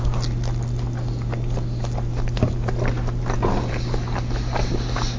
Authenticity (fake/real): real